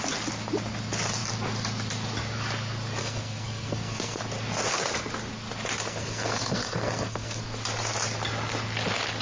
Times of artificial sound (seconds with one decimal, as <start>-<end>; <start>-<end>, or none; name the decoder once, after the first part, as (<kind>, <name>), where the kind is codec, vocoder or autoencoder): 3.0-4.2 (codec, SNAC); 5.8-7.4